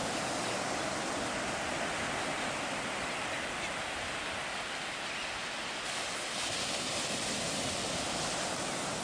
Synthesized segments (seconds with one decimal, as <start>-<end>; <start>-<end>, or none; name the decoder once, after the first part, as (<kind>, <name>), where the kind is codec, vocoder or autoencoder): none